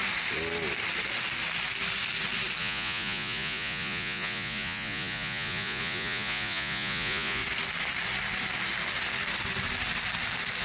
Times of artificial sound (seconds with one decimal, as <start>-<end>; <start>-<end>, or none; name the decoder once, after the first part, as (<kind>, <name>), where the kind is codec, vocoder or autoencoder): 2.6-7.4 (vocoder, Vocos)